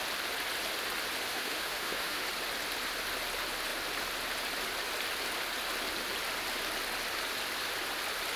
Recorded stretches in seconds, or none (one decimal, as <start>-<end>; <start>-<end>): 0.0-1.3; 2.2-8.4